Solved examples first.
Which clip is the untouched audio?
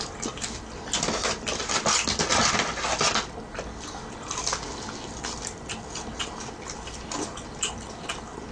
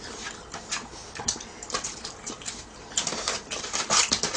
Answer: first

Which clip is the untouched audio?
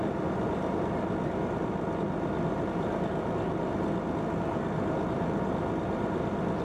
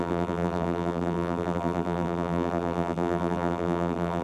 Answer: first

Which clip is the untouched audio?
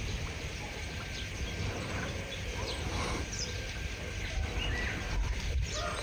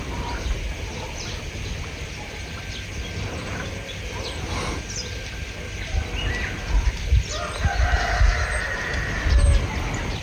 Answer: second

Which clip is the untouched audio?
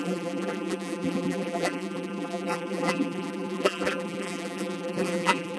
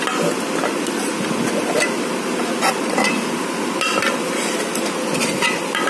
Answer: second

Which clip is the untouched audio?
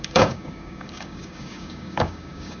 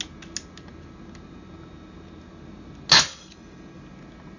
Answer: second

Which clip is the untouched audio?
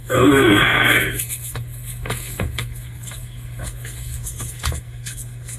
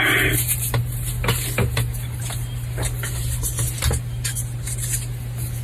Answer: second